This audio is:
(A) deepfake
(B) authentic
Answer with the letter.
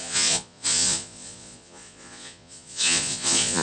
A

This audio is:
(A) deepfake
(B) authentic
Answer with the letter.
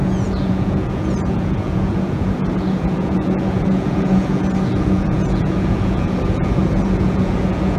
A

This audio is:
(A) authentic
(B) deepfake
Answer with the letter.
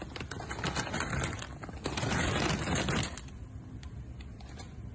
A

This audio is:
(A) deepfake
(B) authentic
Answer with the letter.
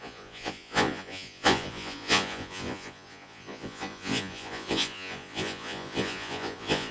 A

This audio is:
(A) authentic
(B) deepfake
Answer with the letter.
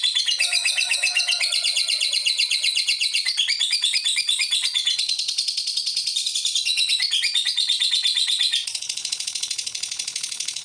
B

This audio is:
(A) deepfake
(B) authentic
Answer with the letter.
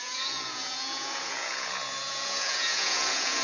A